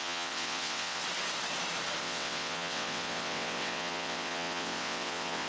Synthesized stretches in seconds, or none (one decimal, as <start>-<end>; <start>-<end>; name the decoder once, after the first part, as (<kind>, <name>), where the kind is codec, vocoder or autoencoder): 0.0-1.0 (vocoder, WaveNeXt); 2.0-5.5